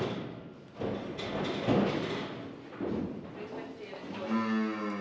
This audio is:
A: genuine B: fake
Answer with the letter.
A